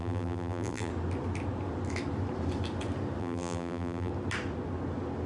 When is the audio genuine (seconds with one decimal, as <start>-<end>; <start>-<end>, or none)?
0.9-3.2; 4.1-5.3